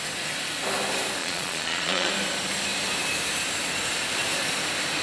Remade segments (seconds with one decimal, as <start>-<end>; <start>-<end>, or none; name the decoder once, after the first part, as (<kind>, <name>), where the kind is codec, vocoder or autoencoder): 1.2-2.1 (vocoder, Vocos)